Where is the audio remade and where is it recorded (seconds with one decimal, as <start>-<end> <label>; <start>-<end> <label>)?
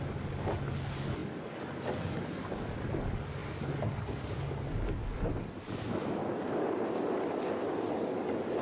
0.0-6.2 remade; 6.2-7.9 recorded; 7.9-8.6 remade